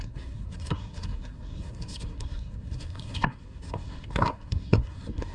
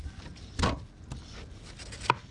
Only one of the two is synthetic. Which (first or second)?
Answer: first